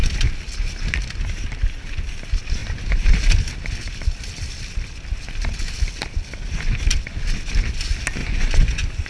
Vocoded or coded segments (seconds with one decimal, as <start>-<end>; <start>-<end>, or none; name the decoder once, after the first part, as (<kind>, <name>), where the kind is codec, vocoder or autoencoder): 8.2-9.1 (vocoder, Vocos)